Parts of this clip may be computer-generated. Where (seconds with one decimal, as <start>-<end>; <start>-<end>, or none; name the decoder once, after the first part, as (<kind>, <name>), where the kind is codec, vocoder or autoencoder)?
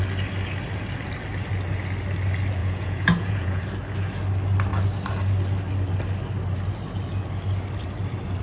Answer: 2.6-3.6 (vocoder, Vocos)